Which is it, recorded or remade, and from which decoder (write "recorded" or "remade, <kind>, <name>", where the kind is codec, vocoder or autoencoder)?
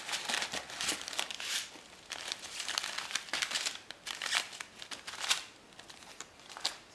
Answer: recorded